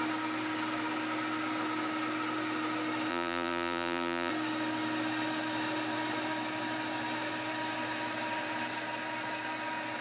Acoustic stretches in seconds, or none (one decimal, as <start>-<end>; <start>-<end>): 0.0-3.1; 4.3-10.0